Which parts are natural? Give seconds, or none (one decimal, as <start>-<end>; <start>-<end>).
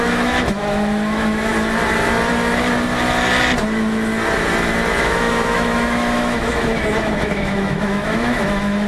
1.5-5.0